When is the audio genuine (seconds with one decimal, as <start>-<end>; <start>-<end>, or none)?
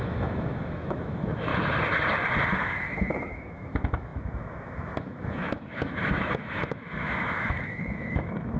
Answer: 1.5-2.5